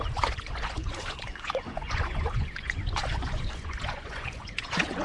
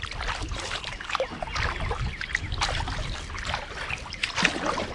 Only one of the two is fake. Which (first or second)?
first